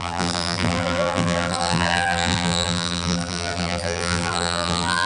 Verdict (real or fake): fake